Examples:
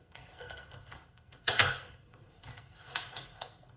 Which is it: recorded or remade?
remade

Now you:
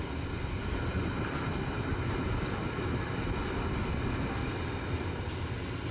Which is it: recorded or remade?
recorded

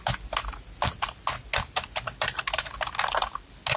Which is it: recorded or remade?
recorded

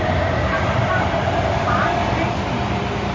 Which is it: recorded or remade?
recorded